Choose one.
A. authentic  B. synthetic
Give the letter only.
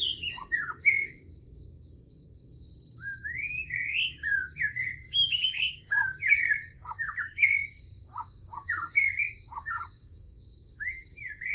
B